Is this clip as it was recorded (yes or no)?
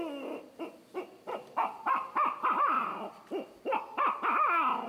yes